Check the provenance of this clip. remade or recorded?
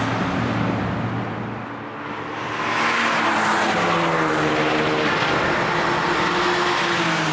recorded